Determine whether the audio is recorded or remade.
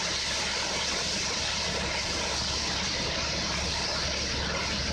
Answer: recorded